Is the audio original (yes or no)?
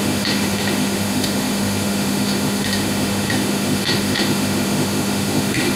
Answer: no